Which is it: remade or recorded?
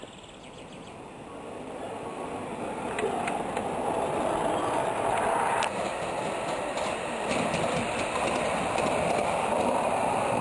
remade